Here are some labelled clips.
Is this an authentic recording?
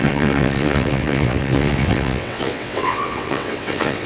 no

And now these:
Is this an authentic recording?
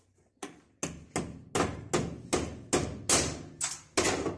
yes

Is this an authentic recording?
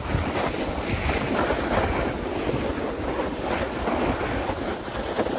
yes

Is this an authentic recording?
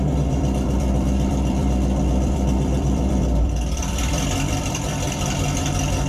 no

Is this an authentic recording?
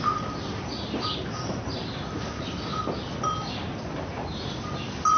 yes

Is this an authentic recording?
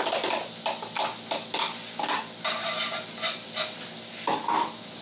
yes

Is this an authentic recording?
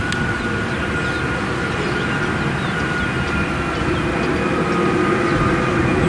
yes